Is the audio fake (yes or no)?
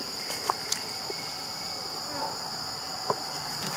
no